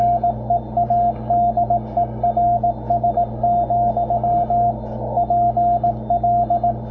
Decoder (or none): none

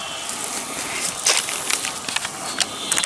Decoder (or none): none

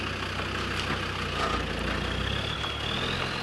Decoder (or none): none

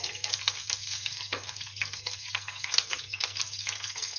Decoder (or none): codec, SNAC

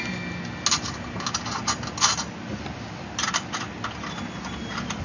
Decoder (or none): none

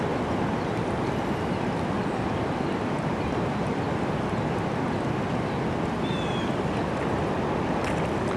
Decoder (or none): none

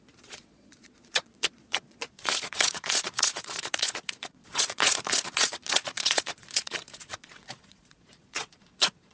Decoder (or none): vocoder, Vocos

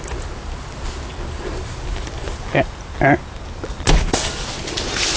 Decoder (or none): none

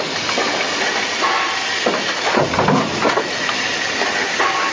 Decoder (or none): none